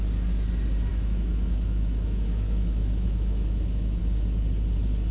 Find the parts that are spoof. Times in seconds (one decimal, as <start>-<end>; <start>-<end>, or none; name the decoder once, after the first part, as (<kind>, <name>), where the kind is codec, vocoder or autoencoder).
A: 0.9-4.0 (autoencoder, DAC-VAE)